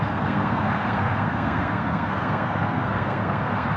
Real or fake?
fake